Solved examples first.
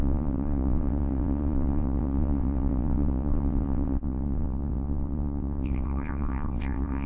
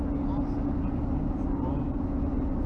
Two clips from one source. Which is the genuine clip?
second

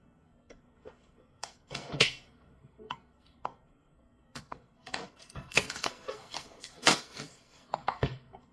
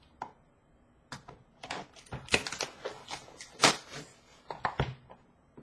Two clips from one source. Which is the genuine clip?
second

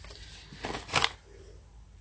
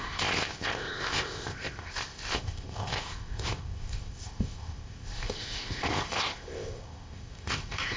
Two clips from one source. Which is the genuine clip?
first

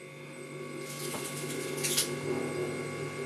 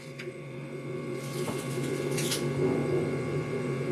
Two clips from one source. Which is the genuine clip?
first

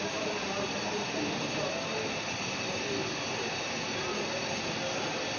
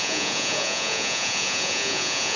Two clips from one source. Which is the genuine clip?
first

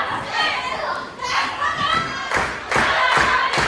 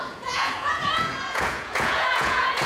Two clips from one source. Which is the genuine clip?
first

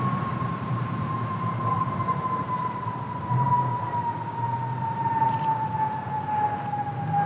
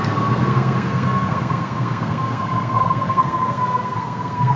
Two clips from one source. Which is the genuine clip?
first